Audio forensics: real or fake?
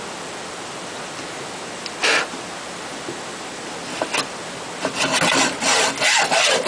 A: real